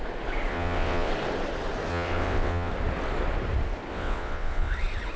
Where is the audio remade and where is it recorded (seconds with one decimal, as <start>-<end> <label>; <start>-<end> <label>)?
0.0-0.5 recorded; 0.5-1.1 remade; 1.1-1.9 recorded; 1.9-2.7 remade; 2.7-3.9 recorded; 3.9-4.7 remade; 4.7-5.2 recorded